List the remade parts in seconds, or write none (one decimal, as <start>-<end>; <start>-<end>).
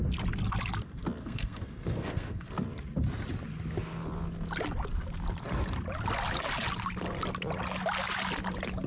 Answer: 1.2-2.5